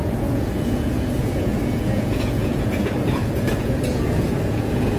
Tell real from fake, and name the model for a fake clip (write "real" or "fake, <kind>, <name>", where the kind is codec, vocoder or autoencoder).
fake, vocoder, Vocos